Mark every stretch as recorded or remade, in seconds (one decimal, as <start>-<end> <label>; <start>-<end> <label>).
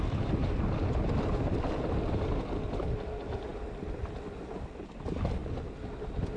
0.0-6.4 recorded